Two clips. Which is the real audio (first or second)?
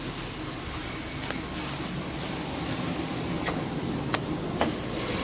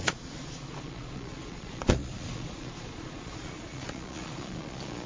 first